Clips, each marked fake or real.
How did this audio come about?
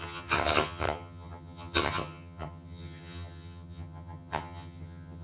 fake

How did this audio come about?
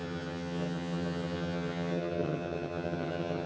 fake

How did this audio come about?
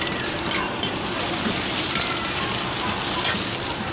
real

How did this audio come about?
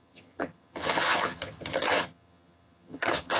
fake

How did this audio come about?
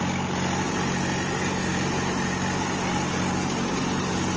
real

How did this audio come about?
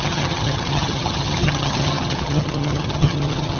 fake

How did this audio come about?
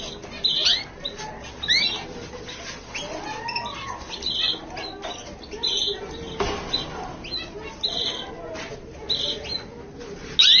real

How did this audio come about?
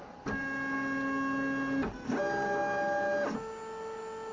real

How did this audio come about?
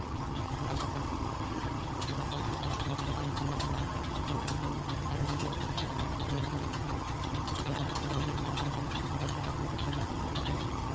fake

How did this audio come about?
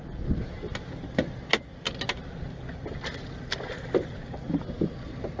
real